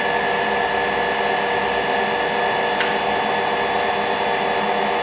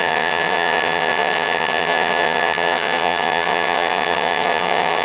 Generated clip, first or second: second